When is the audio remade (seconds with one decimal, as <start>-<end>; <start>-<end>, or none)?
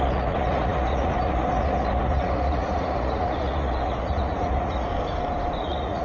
0.0-4.9; 5.6-6.0